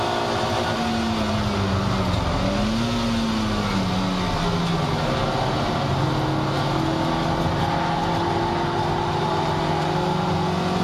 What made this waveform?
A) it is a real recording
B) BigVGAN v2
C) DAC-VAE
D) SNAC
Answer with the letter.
A